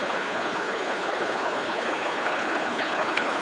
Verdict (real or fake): fake